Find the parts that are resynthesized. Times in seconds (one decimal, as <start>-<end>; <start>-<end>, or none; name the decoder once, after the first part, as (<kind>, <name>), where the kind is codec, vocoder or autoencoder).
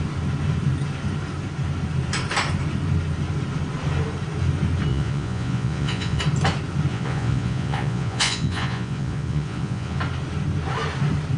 4.9-6.2 (vocoder, Vocos); 6.9-10.0